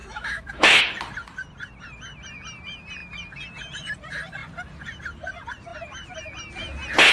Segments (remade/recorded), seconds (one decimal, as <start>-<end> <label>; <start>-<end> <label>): 0.0-0.8 remade; 0.8-7.1 recorded